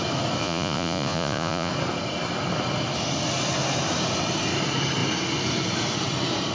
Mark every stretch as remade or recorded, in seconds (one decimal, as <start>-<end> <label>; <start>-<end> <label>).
0.0-0.4 recorded; 0.4-1.7 remade; 1.7-6.5 recorded